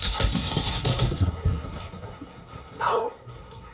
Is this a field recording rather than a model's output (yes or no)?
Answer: no